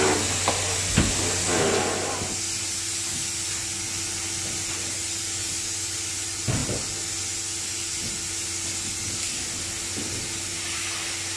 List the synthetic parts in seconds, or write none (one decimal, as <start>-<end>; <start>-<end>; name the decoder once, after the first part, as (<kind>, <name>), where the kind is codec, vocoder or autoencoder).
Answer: none